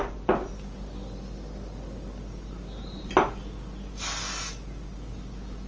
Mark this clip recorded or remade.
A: recorded